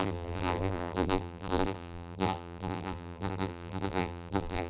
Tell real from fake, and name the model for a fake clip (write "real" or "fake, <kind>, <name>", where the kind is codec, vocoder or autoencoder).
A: fake, vocoder, BigVGAN v2